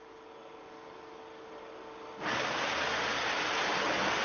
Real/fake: real